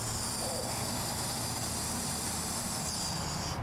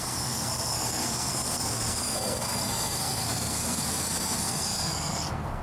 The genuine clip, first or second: first